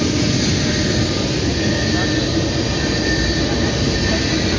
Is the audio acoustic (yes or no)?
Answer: yes